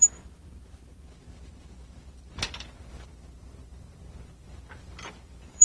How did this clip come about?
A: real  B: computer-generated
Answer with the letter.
B